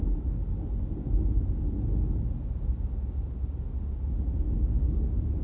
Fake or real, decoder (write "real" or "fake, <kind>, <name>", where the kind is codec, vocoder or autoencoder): real